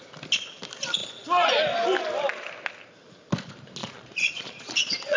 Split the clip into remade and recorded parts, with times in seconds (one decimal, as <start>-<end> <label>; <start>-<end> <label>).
0.0-1.0 recorded; 1.0-1.5 remade; 1.5-3.8 recorded; 3.8-5.2 remade